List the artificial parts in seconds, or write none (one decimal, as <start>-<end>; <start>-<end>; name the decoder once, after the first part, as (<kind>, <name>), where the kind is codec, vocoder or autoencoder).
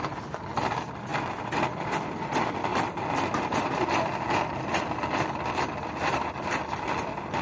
none